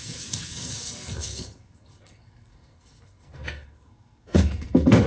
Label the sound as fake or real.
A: fake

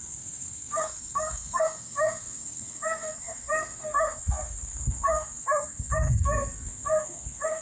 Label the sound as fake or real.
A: fake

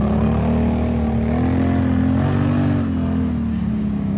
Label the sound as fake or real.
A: real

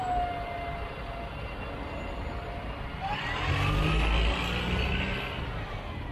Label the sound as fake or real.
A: real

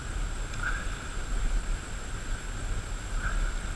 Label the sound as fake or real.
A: real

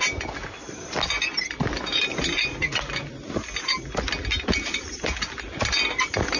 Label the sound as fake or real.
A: real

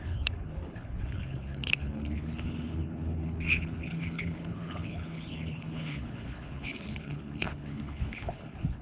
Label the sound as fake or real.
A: fake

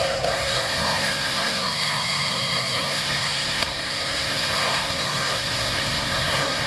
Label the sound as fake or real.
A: fake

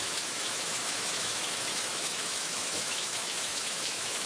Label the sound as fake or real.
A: fake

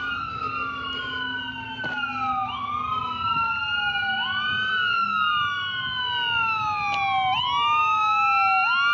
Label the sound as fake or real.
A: real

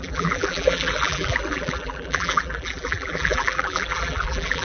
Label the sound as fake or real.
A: fake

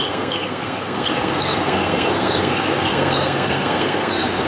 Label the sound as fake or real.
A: fake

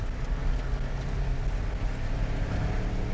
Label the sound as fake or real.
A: real